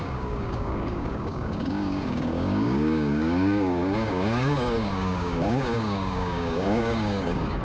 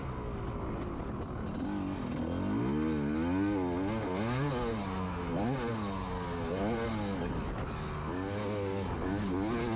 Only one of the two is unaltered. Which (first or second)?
second